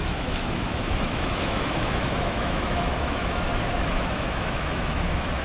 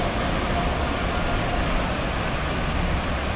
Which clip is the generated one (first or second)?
first